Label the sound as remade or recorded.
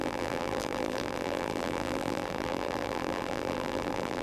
remade